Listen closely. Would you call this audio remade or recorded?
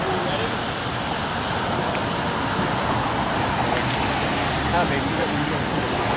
recorded